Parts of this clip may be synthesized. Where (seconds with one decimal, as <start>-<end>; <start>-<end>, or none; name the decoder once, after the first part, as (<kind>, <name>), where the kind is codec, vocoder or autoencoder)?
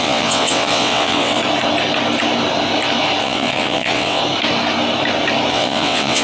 0.0-1.4 (vocoder, WaveNeXt); 3.2-4.2; 5.5-6.2